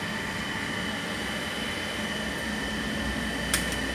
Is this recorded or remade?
recorded